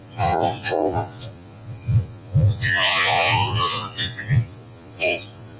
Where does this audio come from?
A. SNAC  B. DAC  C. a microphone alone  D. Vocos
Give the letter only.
D